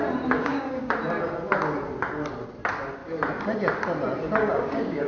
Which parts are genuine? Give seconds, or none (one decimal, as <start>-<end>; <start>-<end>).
0.0-0.4; 0.9-4.4